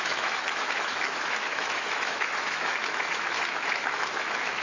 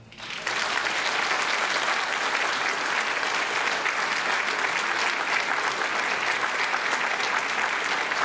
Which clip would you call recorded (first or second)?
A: second